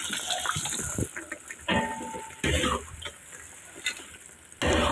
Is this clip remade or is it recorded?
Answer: recorded